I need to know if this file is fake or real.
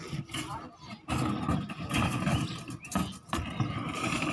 real